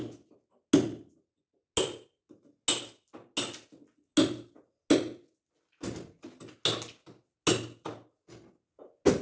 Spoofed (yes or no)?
no